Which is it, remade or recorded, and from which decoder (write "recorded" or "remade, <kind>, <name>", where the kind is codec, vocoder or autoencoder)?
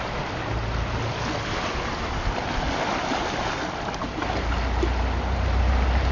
recorded